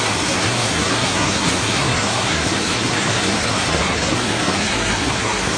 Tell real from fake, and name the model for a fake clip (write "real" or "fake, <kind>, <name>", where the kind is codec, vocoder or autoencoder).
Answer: fake, codec, SNAC